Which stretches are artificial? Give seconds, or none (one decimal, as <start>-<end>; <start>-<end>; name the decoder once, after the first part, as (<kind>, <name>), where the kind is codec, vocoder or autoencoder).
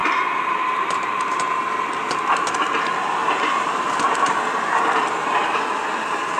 0.0-1.6 (vocoder, BigVGAN v2); 3.2-6.4